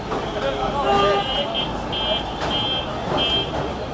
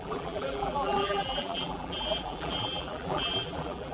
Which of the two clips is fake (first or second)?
second